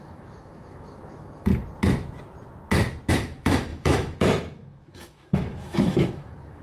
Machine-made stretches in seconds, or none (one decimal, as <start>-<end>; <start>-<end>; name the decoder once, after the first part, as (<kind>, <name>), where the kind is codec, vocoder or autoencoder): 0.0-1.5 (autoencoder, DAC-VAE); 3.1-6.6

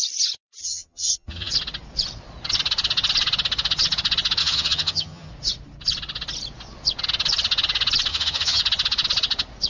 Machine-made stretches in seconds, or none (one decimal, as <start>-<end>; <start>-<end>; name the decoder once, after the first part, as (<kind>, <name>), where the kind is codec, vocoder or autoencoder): 0.6-1.5 (vocoder, HiFi-GAN); 4.4-5.3; 8.1-8.6

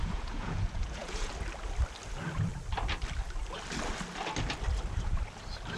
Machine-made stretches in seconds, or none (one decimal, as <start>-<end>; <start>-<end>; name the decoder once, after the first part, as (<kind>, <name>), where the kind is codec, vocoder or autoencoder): 0.0-1.3 (vocoder, Vocos)

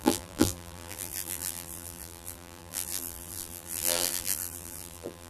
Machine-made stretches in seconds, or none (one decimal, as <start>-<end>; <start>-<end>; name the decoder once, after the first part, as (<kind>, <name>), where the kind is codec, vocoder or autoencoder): 0.0-5.3 (vocoder, BigVGAN v2)